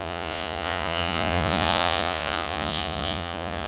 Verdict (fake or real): fake